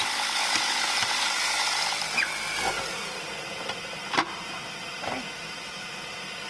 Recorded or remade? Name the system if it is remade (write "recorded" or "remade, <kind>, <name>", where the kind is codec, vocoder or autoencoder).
recorded